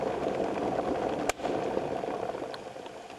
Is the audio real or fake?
real